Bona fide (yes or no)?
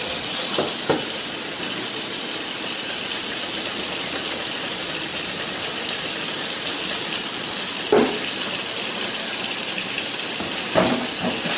yes